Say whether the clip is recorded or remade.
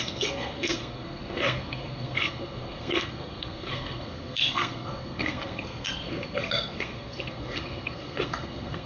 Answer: remade